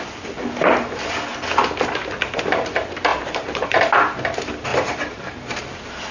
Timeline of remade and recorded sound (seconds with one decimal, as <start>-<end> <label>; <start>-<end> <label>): 0.0-3.1 recorded; 3.1-3.8 remade; 3.8-4.7 recorded; 4.7-5.6 remade; 5.6-6.1 recorded